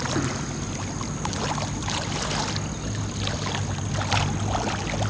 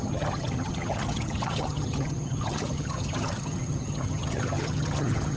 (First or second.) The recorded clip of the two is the first